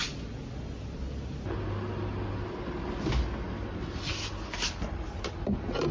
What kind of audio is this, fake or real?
real